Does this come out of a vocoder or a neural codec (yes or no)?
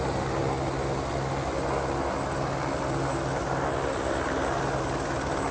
no